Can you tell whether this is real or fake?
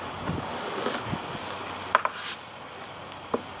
real